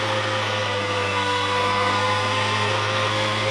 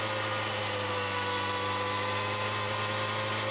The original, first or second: second